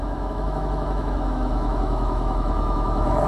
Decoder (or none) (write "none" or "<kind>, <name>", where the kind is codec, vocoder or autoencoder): autoencoder, DAC-VAE